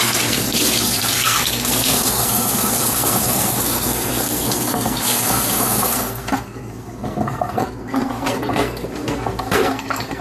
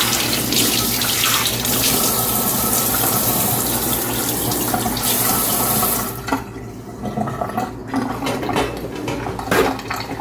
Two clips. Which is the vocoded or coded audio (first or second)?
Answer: first